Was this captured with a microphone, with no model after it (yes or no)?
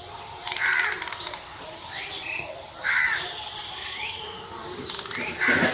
yes